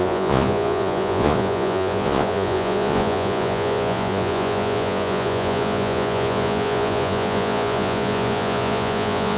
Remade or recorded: remade